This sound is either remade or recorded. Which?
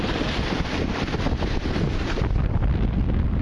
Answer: recorded